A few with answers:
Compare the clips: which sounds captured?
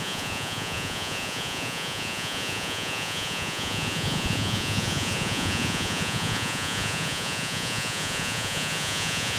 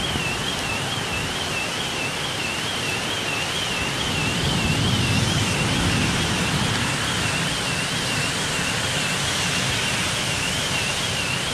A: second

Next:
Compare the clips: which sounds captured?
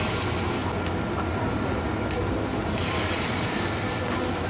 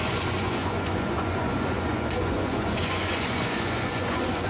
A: first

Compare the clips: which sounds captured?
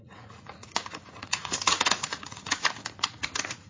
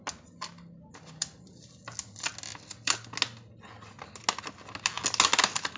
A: second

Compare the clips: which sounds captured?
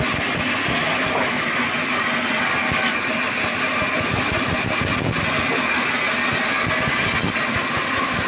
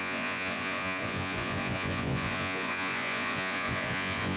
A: first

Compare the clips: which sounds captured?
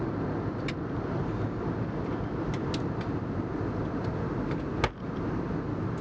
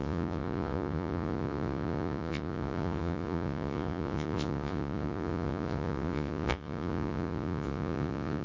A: first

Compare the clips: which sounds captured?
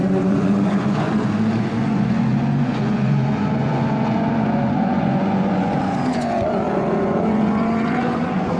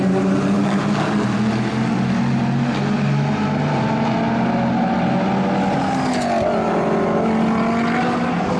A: second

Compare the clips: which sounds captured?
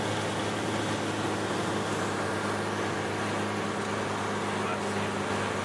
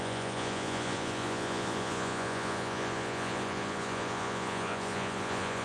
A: first